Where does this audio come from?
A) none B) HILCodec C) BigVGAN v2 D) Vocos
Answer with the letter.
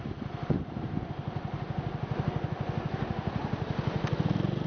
A